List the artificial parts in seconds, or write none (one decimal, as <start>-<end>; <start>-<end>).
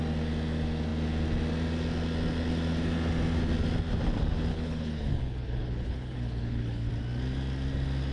4.5-6.9